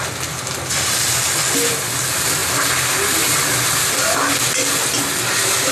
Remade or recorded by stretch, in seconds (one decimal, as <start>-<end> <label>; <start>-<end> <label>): 0.0-5.7 recorded